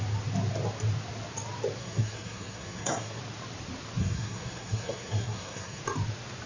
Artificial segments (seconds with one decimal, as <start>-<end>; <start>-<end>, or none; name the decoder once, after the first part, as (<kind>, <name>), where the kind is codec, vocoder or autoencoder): 1.8-3.2 (codec, SNAC); 4.0-5.8